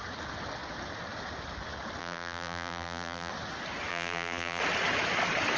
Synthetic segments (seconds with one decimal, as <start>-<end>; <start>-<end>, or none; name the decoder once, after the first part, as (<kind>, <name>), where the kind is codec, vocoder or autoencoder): 2.0-3.3 (vocoder, BigVGAN v2); 3.9-4.6